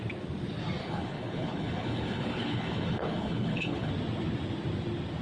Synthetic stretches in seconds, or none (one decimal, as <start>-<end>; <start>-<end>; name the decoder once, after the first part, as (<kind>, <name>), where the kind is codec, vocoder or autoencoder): 0.8-3.9 (codec, HILCodec)